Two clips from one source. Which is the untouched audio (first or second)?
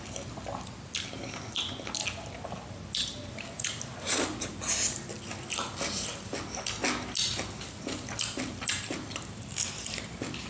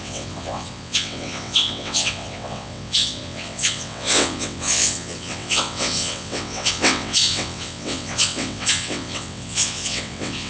first